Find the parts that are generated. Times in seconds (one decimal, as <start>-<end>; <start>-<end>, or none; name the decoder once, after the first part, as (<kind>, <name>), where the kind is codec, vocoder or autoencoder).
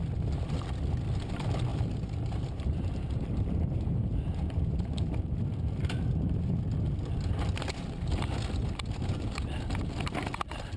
1.7-4.9 (vocoder, BigVGAN v2)